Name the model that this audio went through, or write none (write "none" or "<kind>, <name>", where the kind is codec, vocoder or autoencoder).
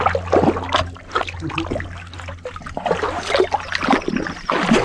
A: none